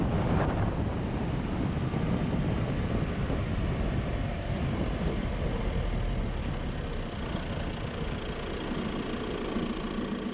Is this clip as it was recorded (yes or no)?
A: yes